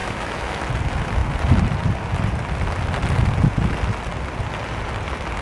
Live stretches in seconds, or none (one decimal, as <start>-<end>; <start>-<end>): 0.6-5.4